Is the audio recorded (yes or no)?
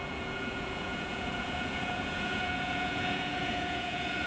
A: no